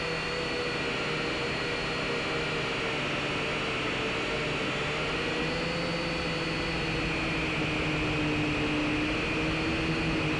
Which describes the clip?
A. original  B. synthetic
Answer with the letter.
A